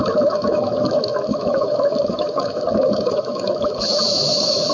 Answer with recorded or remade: remade